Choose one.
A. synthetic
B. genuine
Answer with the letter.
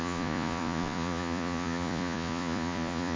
A